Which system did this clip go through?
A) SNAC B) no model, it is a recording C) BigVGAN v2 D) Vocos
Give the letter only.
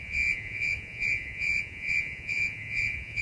D